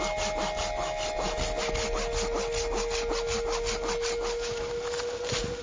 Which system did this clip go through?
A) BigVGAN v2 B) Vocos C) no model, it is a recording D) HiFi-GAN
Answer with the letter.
C